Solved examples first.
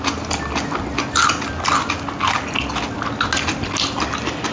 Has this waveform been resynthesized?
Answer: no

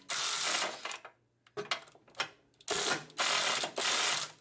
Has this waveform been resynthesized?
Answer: no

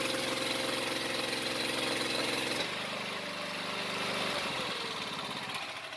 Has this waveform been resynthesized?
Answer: no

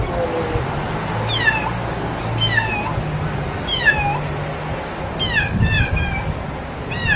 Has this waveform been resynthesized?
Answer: no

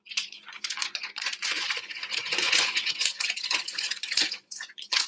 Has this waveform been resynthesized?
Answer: yes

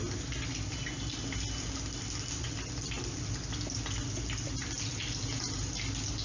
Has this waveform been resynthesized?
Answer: no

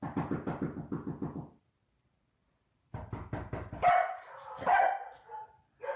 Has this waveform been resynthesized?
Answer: no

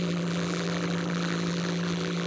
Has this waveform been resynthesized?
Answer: yes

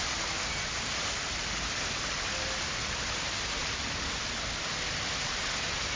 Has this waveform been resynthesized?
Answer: no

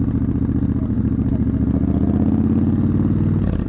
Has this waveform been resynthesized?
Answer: no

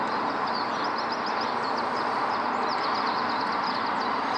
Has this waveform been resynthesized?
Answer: no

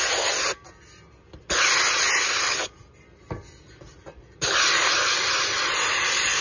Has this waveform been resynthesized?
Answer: no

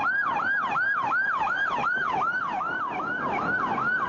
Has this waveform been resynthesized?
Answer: no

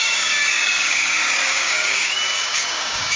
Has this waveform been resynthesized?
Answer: yes